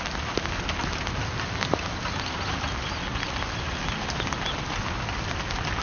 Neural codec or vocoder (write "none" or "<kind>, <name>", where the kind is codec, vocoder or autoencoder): none